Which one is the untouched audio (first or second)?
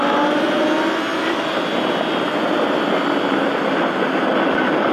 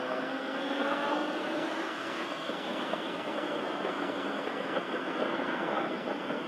first